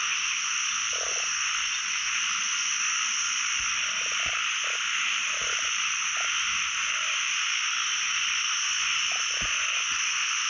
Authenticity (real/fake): real